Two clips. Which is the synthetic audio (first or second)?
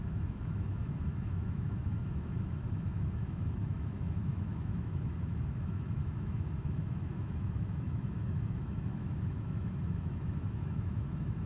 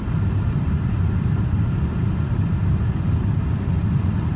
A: first